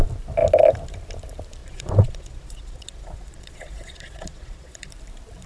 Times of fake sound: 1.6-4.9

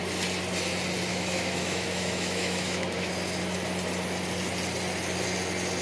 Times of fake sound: 1.1-3.1